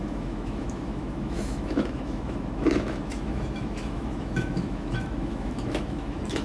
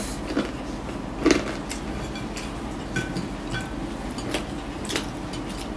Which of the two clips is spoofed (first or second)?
first